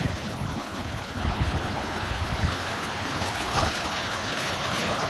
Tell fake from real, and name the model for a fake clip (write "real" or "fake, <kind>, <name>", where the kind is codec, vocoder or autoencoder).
fake, codec, HILCodec